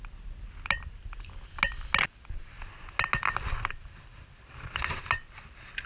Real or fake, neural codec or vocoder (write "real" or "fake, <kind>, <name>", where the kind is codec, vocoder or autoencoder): real